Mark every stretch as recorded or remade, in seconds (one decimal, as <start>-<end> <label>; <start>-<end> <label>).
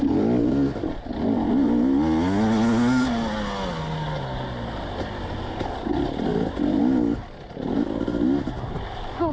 0.0-9.3 recorded